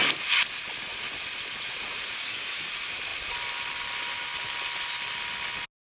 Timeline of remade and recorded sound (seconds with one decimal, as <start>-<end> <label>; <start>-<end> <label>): 0.0-2.2 recorded; 2.2-2.7 remade; 2.7-5.9 recorded